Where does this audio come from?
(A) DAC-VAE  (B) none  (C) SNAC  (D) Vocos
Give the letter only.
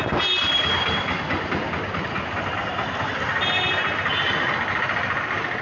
B